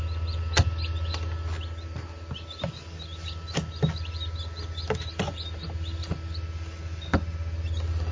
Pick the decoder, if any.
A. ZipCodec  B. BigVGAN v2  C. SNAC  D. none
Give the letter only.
D